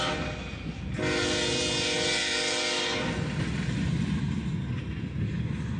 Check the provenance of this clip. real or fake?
real